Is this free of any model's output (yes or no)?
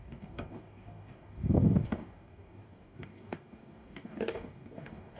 no